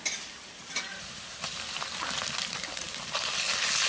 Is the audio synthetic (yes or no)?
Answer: no